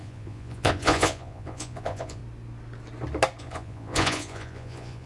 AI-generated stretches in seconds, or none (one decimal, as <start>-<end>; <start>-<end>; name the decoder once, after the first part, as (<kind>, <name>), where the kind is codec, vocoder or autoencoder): 0.0-2.2 (vocoder, Vocos); 3.4-5.1